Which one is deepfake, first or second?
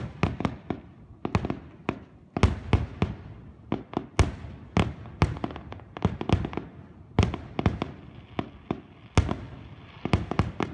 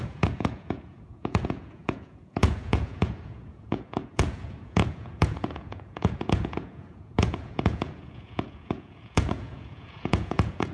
second